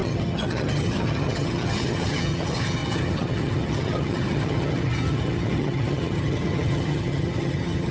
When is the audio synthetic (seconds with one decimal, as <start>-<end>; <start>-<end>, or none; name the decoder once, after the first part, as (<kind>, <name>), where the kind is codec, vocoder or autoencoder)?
0.0-7.9 (vocoder, HiFi-GAN)